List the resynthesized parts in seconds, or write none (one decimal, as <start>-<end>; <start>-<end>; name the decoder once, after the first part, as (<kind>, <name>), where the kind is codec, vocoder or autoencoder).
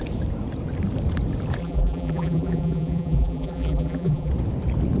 1.6-4.3 (vocoder, BigVGAN v2)